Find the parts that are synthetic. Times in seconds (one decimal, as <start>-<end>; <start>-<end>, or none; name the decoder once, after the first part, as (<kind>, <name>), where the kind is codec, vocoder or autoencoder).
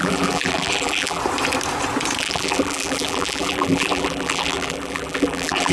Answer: 0.0-1.2 (vocoder, BigVGAN v2); 2.2-5.7